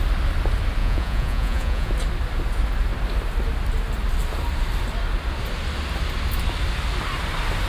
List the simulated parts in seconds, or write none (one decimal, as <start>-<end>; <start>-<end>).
0.8-1.9